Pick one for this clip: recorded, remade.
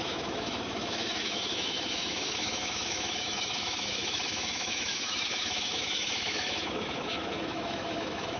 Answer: remade